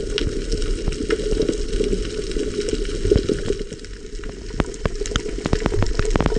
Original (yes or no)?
yes